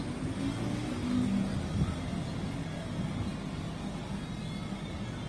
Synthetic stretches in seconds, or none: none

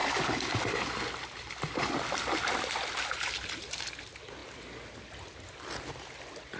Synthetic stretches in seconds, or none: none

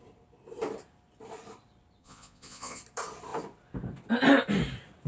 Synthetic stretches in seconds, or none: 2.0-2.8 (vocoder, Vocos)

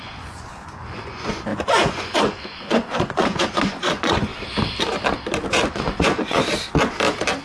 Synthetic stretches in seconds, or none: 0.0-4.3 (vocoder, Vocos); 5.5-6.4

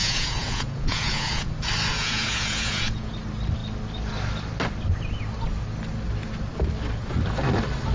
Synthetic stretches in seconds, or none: 0.0-1.5 (vocoder, Vocos); 1.9-3.1

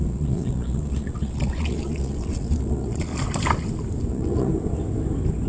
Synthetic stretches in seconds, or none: 0.0-3.1 (vocoder, Vocos); 4.1-4.5